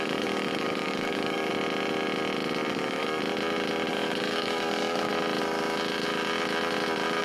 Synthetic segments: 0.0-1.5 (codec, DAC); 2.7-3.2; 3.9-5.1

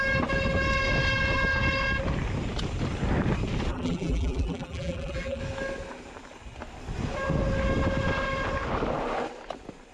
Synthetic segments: 3.7-5.4 (vocoder, BigVGAN v2)

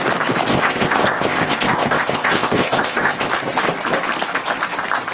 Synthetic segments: 0.5-3.3 (codec, ZipCodec)